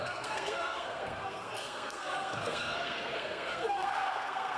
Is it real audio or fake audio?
fake